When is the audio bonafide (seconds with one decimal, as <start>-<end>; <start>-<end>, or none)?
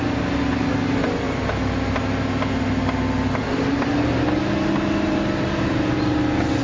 0.0-6.6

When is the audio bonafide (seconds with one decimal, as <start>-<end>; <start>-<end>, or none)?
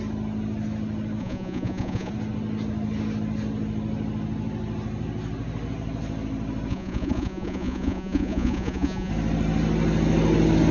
0.0-1.2; 2.1-6.7; 9.1-10.7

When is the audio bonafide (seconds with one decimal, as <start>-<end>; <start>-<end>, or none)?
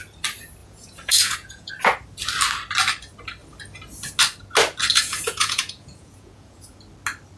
0.0-0.6; 1.7-4.9; 6.8-7.4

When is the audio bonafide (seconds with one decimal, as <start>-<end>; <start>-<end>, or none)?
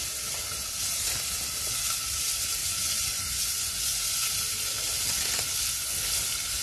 0.0-2.6; 4.3-6.6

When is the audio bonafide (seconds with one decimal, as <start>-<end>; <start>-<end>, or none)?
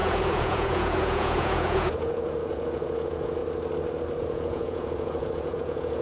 3.4-4.2